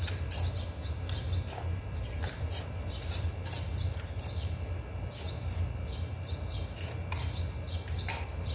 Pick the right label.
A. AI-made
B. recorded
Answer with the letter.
B